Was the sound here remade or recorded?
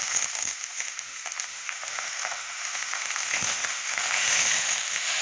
remade